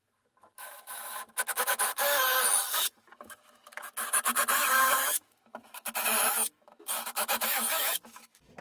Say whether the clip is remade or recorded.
remade